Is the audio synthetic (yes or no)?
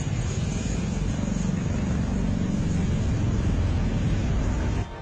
no